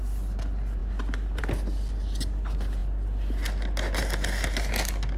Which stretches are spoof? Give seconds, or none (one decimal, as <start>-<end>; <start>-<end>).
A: none